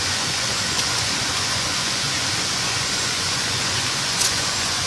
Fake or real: fake